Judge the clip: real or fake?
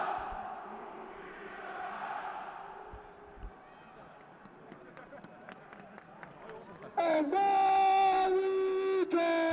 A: real